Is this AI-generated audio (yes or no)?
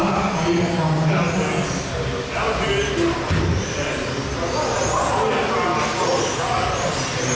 no